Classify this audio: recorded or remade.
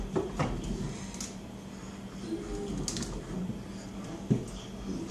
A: recorded